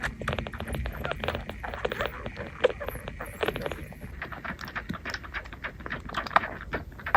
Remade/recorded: recorded